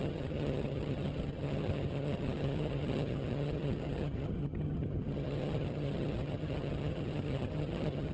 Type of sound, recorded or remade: remade